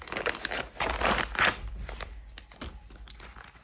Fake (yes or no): no